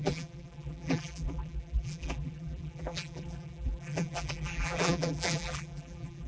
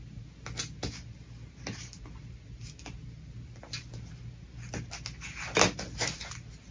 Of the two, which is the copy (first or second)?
first